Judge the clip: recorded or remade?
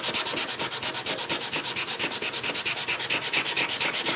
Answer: recorded